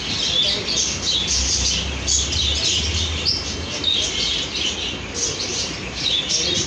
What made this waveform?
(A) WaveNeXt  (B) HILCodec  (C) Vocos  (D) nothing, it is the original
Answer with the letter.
D